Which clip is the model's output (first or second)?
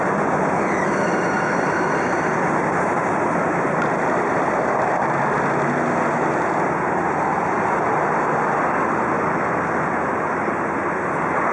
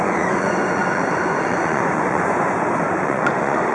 second